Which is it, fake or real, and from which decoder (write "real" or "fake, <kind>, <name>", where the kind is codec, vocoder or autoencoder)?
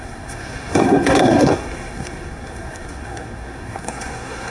fake, codec, SNAC